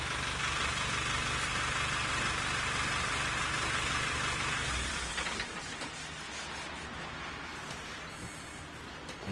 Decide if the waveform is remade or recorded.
recorded